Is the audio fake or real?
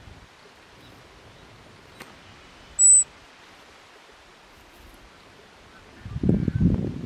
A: real